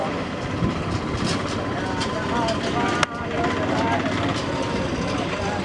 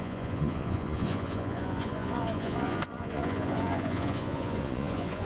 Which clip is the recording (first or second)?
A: first